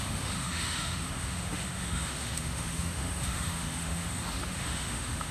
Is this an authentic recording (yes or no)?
no